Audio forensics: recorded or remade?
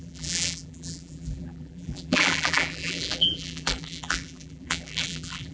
remade